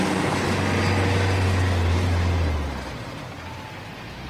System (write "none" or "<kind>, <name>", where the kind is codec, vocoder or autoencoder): none